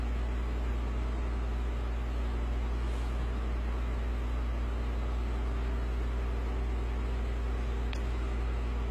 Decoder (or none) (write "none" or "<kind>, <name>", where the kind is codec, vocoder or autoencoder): none